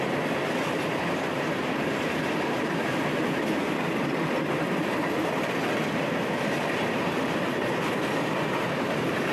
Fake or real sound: real